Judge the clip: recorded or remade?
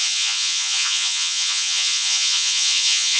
remade